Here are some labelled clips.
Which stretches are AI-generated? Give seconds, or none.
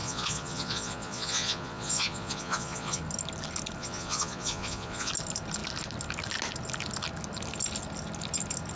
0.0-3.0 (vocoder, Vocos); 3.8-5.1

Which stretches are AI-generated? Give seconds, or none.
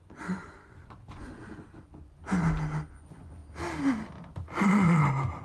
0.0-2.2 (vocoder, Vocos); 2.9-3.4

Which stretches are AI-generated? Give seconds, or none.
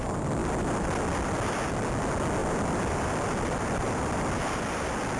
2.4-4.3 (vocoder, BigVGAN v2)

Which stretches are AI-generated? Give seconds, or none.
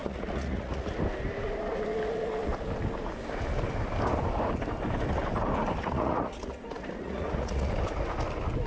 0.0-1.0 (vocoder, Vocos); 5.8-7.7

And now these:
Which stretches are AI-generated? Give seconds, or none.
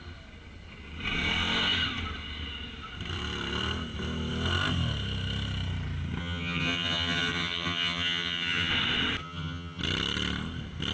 6.2-8.7 (vocoder, HiFi-GAN); 9.2-9.8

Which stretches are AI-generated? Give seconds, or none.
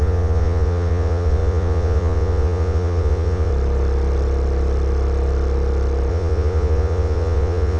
0.0-3.5 (vocoder, Vocos); 6.1-7.8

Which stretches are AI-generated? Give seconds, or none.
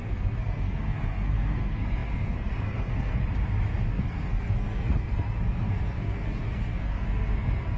0.0-3.2 (codec, SNAC); 3.9-7.8